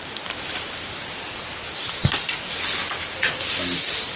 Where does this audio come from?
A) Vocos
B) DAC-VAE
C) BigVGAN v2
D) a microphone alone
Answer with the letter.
D